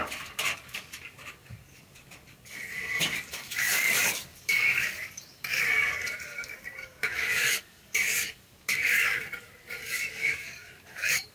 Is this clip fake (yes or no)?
yes